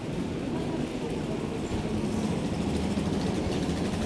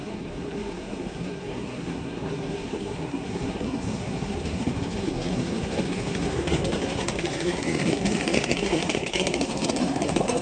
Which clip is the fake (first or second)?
second